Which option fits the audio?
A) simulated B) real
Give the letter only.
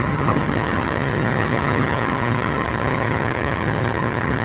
A